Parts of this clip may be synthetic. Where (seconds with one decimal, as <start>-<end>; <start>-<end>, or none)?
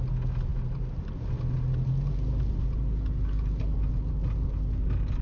none